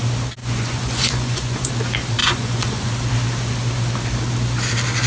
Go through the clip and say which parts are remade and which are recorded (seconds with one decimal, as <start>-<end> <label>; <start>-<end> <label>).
0.0-0.4 recorded; 0.4-1.7 remade; 1.7-2.2 recorded; 2.2-2.9 remade; 2.9-5.1 recorded